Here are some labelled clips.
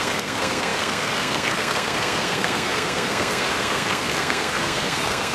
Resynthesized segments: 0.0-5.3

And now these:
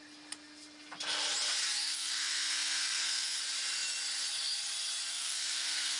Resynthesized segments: 1.8-3.4; 5.1-6.0

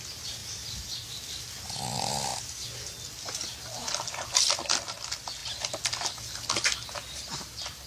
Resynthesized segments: 0.4-1.8